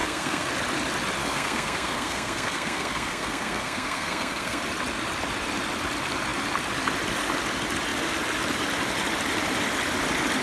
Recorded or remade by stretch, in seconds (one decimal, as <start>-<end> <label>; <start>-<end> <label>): 0.0-0.5 remade; 0.5-1.2 recorded; 1.2-4.6 remade; 4.6-10.4 recorded